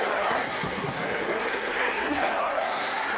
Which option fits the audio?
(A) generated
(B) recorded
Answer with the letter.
A